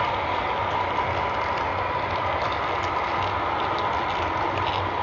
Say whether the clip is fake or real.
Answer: real